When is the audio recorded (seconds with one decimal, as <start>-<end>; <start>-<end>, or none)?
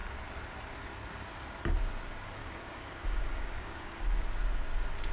0.0-2.4; 4.0-5.1